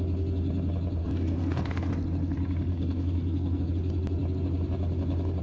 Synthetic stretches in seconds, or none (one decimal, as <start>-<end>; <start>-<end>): 1.0-1.9; 2.7-3.7